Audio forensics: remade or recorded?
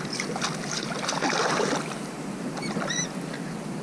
recorded